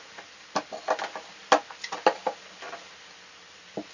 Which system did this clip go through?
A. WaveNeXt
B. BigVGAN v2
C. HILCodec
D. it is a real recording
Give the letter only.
D